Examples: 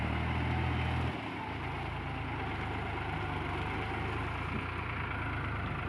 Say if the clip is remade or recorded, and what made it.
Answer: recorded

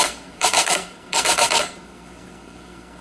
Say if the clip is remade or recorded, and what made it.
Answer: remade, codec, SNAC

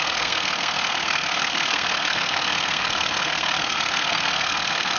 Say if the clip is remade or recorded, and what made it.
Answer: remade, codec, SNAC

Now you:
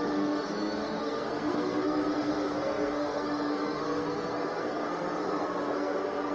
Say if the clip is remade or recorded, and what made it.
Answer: remade, codec, SNAC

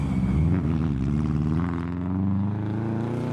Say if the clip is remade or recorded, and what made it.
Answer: recorded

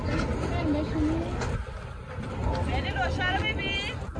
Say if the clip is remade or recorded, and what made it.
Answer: recorded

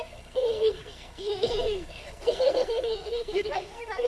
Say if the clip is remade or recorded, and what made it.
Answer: remade, codec, SNAC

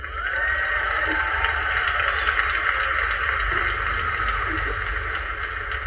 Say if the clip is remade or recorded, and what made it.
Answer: recorded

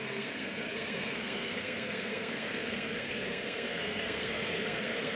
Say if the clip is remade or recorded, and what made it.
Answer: remade, codec, SNAC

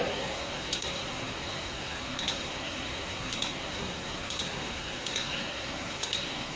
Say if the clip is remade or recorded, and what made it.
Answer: remade, codec, SNAC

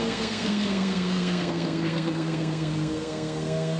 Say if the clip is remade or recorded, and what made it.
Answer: remade, codec, SNAC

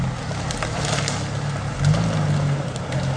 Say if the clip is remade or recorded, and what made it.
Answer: recorded